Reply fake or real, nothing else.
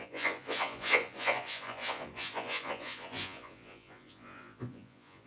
fake